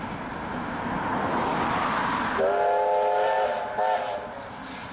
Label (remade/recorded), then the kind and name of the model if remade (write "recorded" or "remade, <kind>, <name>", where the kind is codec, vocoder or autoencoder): recorded